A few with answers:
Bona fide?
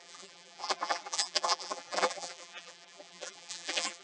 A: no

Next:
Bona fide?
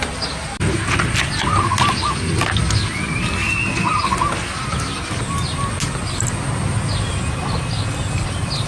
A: yes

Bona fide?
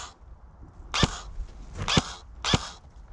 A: yes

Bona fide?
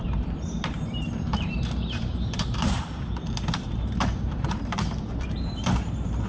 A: no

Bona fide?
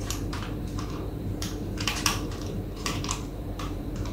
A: no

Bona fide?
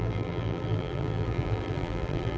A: no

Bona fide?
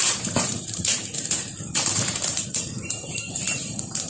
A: no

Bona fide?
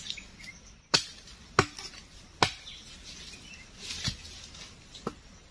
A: yes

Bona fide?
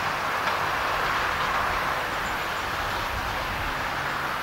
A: yes